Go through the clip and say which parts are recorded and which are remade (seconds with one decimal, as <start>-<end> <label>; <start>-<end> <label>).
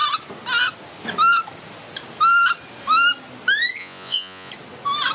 0.0-3.8 recorded; 3.8-4.5 remade; 4.5-5.1 recorded